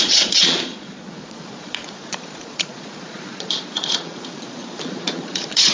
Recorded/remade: remade